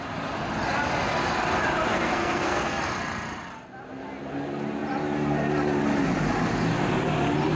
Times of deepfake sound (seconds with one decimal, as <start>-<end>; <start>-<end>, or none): 1.9-2.8